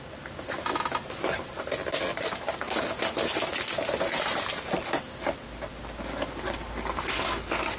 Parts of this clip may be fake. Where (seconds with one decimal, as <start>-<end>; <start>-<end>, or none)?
none